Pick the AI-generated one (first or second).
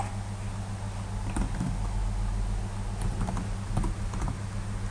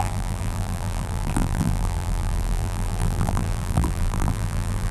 second